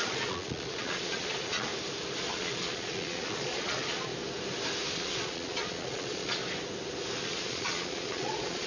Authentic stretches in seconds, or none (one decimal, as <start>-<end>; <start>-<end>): 1.7-2.3; 4.1-4.9; 6.4-7.2